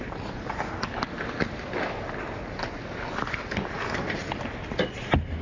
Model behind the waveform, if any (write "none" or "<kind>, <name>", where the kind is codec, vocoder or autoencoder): none